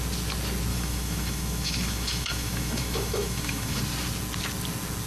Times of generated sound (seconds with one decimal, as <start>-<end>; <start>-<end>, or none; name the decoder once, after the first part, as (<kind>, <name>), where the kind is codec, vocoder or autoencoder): 0.7-3.8 (autoencoder, DAC-VAE)